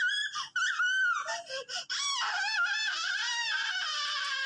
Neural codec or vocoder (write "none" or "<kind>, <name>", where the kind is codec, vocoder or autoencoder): none